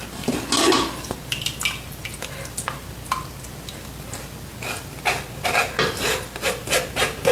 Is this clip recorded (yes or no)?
yes